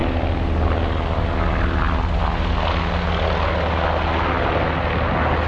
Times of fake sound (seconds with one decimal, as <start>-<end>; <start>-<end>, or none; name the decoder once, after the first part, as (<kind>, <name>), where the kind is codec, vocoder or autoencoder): none